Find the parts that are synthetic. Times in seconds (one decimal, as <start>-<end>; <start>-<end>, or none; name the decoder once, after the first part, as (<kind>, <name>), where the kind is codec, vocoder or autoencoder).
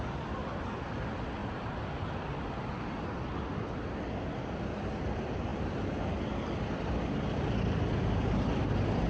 none